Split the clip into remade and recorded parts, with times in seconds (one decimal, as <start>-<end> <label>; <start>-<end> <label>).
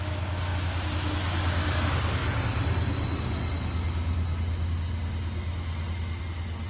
0.0-6.7 recorded